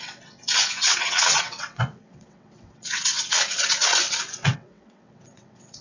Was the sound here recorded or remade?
remade